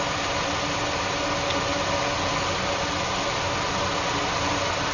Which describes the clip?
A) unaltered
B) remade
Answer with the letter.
A